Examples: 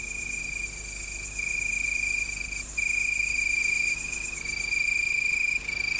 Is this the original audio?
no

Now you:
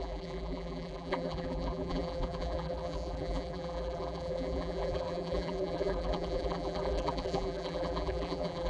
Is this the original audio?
no